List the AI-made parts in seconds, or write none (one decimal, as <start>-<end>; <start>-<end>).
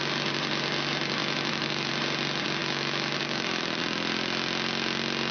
1.2-1.9; 2.6-3.8